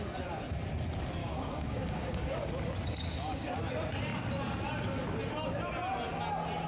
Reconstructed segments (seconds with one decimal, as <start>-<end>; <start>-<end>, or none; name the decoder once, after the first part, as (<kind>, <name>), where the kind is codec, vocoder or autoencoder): 1.2-2.5 (codec, DAC)